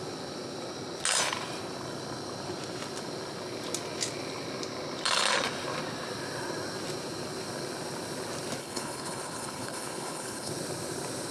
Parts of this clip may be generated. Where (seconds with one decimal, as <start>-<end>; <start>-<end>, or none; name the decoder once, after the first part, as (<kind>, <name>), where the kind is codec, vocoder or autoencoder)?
8.6-10.5 (codec, HILCodec)